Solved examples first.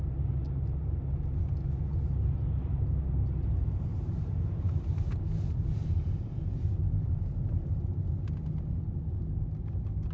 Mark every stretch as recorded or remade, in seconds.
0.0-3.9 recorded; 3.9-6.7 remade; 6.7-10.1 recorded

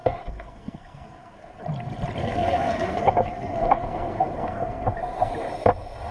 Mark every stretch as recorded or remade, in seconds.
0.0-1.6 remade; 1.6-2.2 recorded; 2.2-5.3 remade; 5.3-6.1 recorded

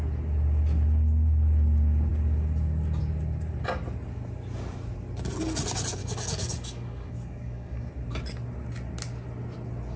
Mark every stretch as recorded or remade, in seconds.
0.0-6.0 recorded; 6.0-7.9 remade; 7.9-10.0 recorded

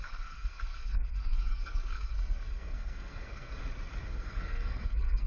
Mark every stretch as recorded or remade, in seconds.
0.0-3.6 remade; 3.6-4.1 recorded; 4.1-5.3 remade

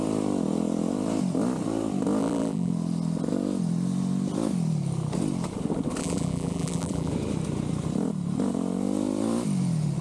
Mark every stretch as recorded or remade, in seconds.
0.0-2.2 recorded; 2.2-2.7 remade; 2.7-6.0 recorded; 6.0-7.1 remade; 7.1-10.0 recorded